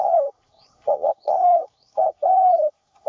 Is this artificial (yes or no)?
yes